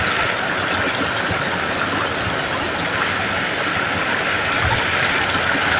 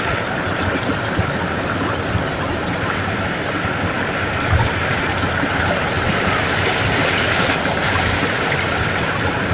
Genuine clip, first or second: first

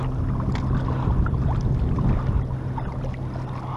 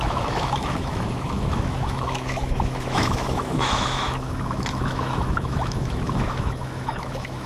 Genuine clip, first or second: first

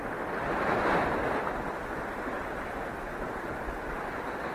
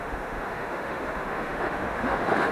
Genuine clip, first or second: first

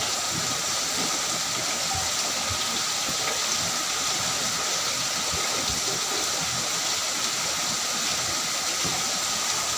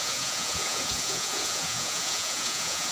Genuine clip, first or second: first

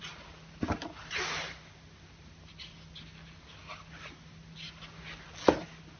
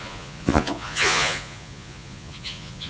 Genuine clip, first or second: first